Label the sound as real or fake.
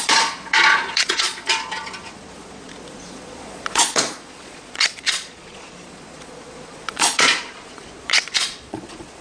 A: fake